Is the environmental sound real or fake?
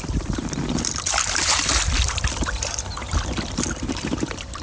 real